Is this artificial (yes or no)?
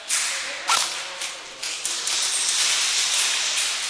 no